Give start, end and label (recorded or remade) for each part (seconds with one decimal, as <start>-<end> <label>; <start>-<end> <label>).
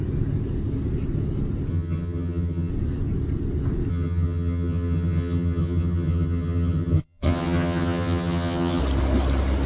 0.0-1.7 recorded; 1.7-2.7 remade; 2.7-3.9 recorded; 3.9-8.8 remade; 8.8-9.7 recorded